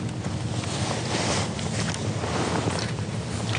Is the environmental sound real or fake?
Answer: real